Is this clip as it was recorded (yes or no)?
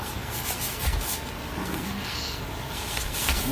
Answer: no